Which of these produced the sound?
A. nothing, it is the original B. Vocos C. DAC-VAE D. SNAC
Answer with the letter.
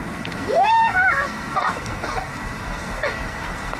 D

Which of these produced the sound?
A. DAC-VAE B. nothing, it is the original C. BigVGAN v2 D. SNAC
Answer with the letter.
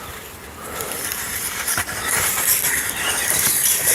C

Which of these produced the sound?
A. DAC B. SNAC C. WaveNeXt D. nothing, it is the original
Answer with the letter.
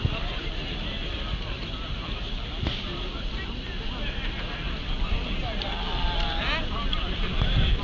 D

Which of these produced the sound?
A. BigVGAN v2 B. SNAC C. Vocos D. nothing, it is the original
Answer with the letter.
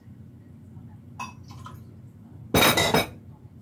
D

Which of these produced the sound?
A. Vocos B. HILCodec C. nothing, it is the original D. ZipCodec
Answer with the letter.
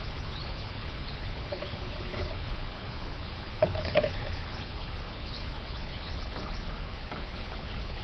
B